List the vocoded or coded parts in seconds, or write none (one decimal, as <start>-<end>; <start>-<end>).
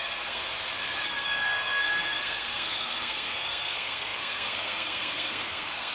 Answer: 0.0-0.4; 1.0-5.9